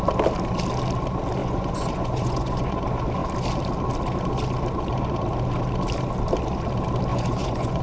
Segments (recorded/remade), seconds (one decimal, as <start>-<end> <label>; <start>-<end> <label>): 0.0-1.4 recorded; 1.4-2.8 remade; 2.8-7.1 recorded; 7.1-7.8 remade